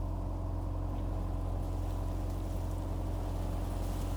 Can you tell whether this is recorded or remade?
recorded